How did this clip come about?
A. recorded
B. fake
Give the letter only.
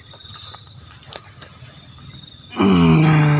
A